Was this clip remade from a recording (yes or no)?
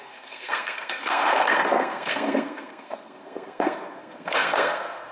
yes